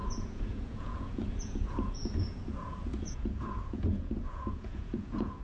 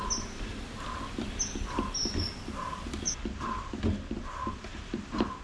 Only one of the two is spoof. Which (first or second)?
first